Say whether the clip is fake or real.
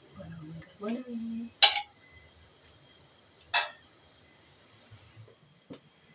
real